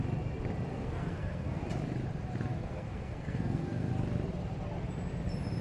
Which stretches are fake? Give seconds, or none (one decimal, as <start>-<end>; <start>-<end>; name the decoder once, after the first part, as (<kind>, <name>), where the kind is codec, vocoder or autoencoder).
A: 0.7-1.6 (codec, SNAC); 2.5-3.9